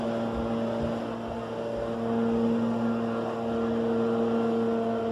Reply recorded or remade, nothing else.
recorded